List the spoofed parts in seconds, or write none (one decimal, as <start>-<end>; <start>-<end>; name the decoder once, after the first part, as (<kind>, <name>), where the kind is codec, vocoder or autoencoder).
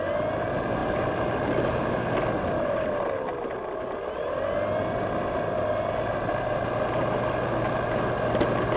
none